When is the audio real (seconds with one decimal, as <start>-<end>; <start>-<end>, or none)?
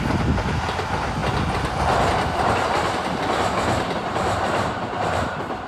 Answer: 0.0-4.0; 5.3-5.7